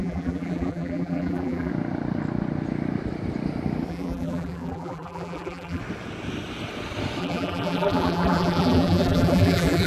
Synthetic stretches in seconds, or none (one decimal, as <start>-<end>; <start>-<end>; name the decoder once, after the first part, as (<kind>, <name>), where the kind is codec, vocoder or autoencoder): 0.0-1.7 (vocoder, BigVGAN v2); 3.9-5.8; 7.2-9.9